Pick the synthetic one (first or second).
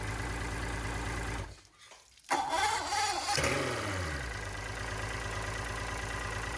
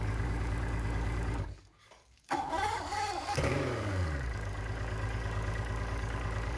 second